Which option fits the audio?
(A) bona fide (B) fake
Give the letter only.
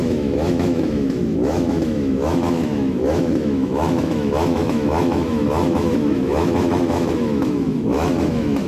B